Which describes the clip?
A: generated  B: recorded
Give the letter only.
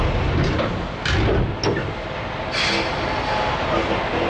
B